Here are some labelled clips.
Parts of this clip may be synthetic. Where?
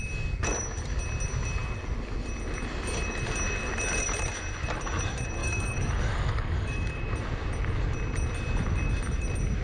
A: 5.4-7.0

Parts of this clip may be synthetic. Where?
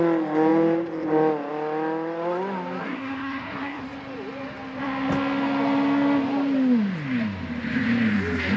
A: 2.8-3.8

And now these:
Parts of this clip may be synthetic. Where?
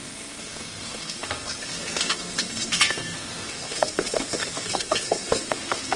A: 0.0-6.0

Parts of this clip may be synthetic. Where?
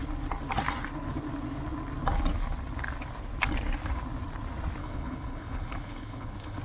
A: 4.8-6.6